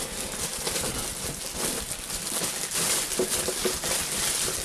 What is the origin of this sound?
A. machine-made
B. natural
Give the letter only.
B